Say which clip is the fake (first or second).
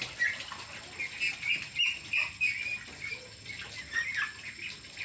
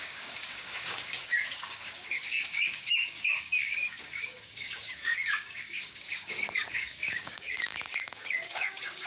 second